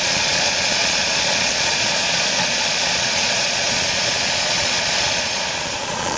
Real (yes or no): no